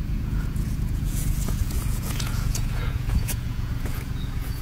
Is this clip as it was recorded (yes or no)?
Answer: no